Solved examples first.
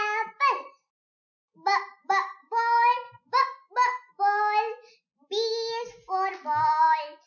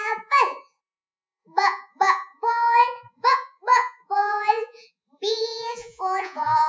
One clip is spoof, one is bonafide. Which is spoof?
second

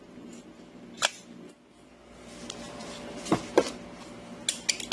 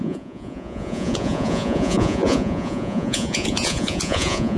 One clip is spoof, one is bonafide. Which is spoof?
second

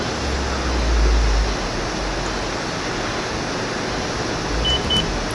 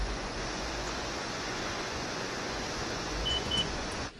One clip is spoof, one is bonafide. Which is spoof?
second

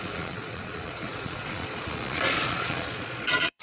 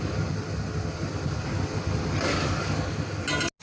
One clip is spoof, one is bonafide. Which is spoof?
first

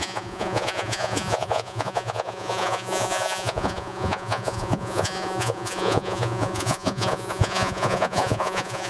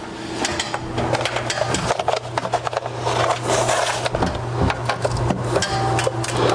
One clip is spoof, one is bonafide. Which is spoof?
first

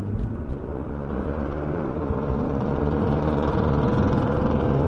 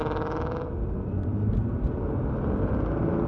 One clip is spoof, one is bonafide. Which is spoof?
first